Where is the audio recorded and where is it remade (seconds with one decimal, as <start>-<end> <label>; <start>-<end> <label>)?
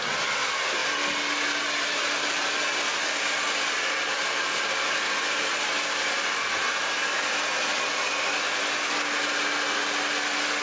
0.0-10.6 recorded